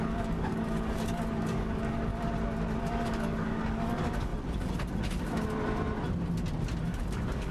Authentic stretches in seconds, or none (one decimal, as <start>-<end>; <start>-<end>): 2.1-2.8; 4.3-6.8